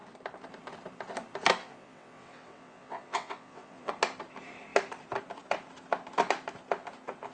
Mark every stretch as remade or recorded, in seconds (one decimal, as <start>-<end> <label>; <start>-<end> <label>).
0.0-1.6 recorded; 1.6-3.9 remade; 3.9-7.3 recorded